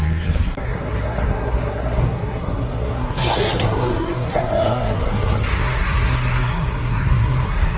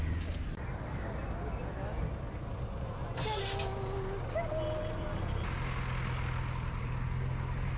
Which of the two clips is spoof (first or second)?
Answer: first